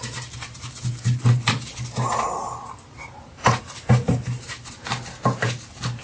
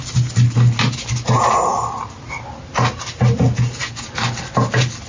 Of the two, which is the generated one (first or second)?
first